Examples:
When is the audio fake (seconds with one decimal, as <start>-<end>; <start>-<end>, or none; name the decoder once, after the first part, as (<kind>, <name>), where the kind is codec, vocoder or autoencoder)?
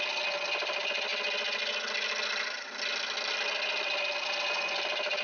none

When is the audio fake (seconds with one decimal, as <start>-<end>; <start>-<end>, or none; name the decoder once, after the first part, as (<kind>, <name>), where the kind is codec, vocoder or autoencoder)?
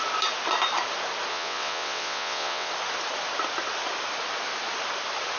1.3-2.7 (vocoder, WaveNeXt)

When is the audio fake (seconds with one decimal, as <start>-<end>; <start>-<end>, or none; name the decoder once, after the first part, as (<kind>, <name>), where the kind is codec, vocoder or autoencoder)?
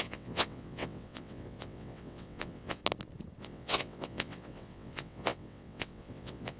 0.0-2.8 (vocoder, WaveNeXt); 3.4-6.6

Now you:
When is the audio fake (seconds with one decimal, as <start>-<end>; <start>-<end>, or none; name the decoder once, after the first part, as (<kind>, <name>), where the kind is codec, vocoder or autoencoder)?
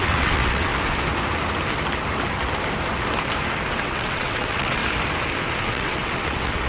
0.0-0.7 (vocoder, WaveNeXt); 3.7-4.8; 5.6-6.7